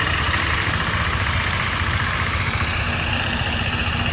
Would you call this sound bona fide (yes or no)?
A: yes